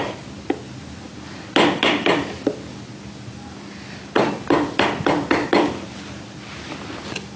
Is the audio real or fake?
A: real